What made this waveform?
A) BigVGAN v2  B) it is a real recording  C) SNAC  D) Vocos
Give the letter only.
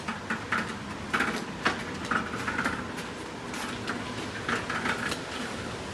B